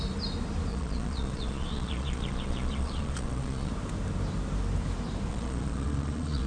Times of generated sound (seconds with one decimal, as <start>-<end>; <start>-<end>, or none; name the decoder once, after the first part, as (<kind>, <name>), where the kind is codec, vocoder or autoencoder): 0.7-3.7 (vocoder, Vocos); 5.3-6.5